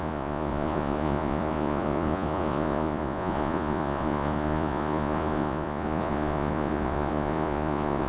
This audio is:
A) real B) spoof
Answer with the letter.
B